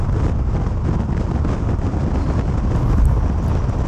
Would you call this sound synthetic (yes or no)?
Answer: no